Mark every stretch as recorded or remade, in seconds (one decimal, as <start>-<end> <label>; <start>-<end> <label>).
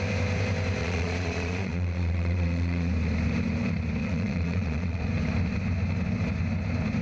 0.0-0.8 recorded; 0.8-2.9 remade; 2.9-4.0 recorded; 4.0-5.0 remade; 5.0-7.0 recorded